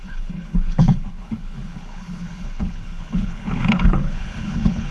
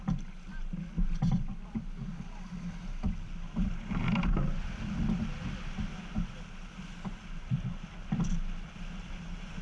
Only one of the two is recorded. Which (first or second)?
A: second